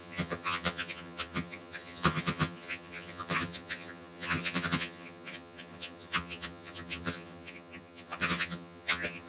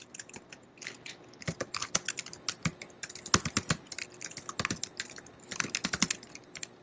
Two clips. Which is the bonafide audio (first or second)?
second